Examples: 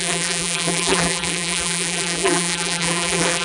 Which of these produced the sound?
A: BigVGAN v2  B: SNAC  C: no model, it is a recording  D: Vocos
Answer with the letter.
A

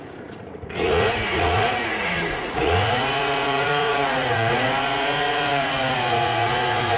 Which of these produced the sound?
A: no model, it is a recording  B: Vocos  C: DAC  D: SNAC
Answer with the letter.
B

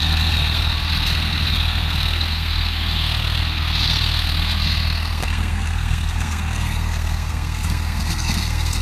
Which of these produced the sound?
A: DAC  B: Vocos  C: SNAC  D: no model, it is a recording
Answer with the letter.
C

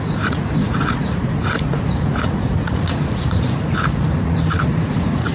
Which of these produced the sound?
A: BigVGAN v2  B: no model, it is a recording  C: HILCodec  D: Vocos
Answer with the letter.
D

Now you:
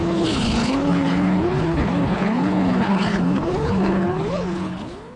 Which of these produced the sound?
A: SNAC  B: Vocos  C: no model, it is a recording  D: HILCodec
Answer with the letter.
D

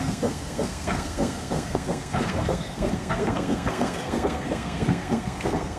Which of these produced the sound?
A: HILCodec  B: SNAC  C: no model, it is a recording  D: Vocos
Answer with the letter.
B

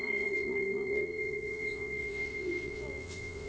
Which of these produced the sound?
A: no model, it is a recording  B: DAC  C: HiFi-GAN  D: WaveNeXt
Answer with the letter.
D